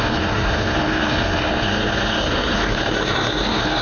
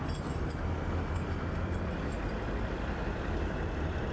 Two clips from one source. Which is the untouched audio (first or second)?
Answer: second